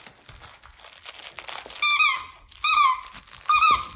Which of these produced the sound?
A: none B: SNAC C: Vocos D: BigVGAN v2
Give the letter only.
A